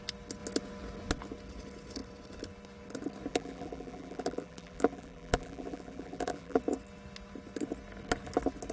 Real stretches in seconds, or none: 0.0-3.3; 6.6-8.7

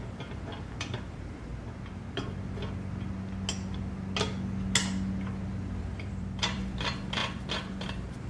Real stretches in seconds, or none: 1.5-5.6

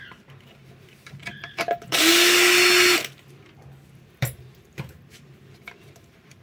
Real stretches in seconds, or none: 2.1-4.1

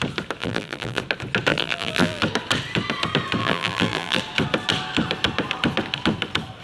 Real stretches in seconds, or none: 0.0-0.4; 1.0-1.5; 2.2-3.4; 4.2-6.6

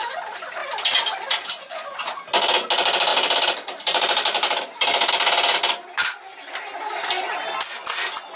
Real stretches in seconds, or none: 0.0-3.1; 5.1-8.4

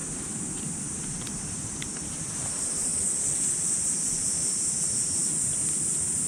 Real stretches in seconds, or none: 0.0-2.2; 2.9-4.8

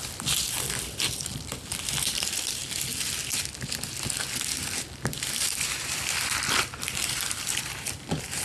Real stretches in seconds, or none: 2.6-4.2